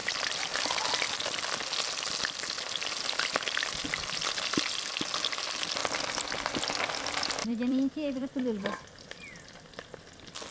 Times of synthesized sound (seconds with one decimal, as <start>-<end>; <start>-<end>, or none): 0.0-1.1; 5.8-6.6; 7.4-9.1